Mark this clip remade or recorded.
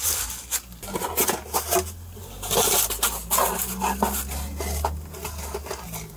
recorded